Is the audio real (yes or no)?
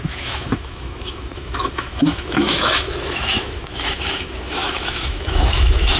no